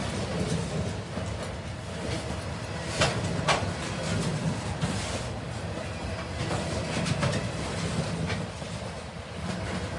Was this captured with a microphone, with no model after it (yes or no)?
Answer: yes